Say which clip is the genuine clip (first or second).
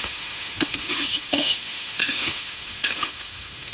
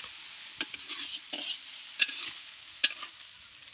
second